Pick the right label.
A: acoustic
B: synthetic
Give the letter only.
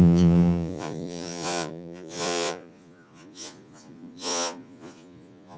B